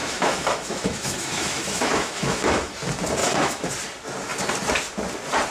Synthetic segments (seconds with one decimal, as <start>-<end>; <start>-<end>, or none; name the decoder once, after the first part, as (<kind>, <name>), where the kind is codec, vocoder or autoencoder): 0.0-2.7 (autoencoder, DAC-VAE); 3.2-3.7